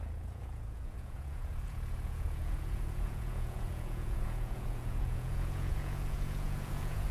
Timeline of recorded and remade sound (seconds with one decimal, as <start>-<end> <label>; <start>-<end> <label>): 0.0-7.1 remade